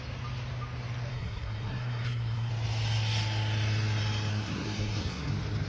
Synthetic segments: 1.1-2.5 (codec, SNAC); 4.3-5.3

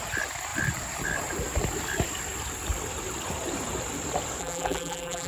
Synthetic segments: 4.4-5.3 (vocoder, BigVGAN v2)

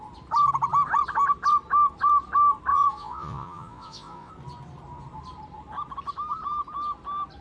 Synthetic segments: 2.7-4.3 (vocoder, Vocos)

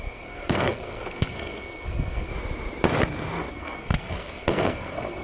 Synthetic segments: 0.0-2.3 (codec, SNAC); 3.5-5.2

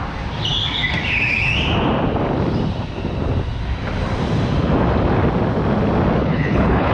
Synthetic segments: 6.2-6.9 (codec, HILCodec)

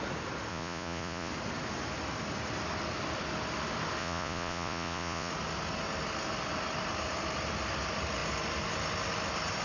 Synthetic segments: 0.5-1.3 (vocoder, Vocos); 4.0-5.3